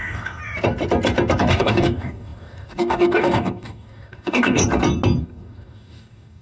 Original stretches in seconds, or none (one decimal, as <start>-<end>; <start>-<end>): 0.4-1.4; 4.6-5.2